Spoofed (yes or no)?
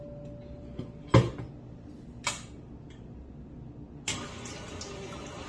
no